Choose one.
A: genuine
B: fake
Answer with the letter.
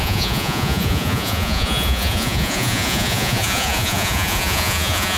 B